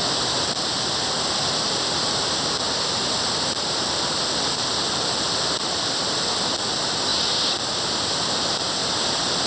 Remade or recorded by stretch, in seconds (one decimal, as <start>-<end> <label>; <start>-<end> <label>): 0.0-9.5 recorded